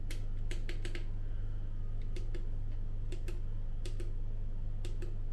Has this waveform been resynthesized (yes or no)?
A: no